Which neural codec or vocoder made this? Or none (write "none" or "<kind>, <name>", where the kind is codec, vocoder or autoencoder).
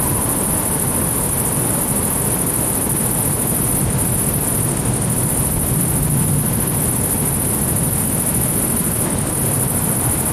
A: none